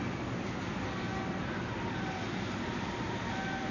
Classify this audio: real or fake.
real